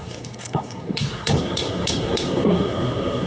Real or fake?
fake